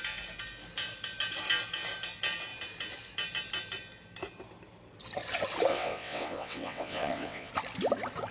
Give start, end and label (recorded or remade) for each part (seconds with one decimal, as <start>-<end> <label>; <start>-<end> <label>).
0.0-5.7 recorded; 5.7-7.5 remade; 7.5-8.3 recorded